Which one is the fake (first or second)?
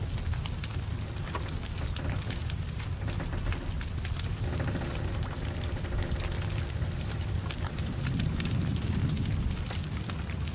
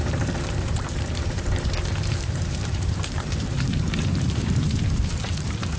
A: second